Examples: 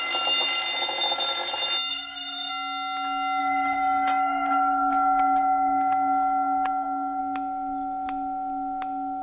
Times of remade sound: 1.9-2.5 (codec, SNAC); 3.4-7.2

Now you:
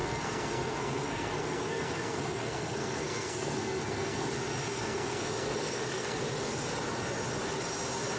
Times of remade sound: 0.0-4.3 (codec, SNAC); 4.7-6.2